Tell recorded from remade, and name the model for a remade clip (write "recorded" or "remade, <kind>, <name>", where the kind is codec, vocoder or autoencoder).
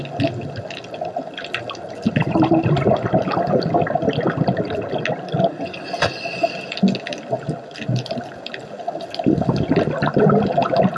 recorded